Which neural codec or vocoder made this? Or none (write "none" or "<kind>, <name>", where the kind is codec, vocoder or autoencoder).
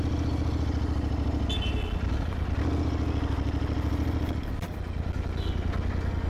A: none